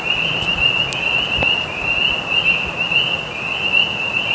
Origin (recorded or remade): recorded